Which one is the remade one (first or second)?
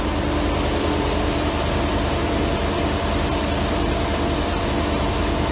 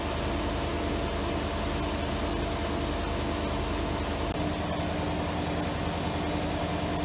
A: first